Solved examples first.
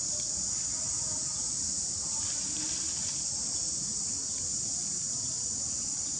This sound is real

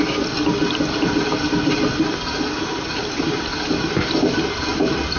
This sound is real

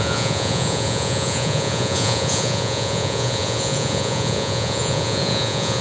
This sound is fake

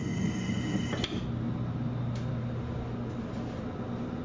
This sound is real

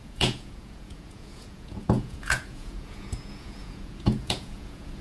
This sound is fake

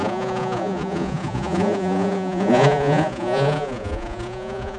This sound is fake